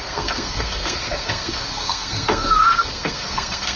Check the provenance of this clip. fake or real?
fake